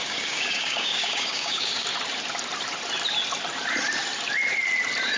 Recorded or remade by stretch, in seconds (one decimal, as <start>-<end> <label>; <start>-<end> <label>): 0.0-1.9 remade; 1.9-5.2 recorded